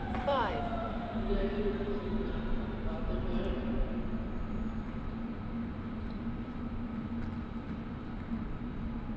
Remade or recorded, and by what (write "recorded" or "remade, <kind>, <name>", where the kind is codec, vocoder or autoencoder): remade, vocoder, BigVGAN v2